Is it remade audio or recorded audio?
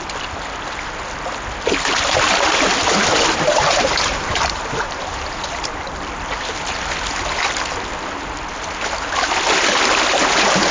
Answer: recorded